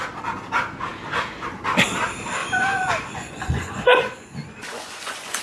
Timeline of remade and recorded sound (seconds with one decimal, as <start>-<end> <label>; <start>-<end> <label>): 0.0-2.4 recorded; 2.4-5.4 remade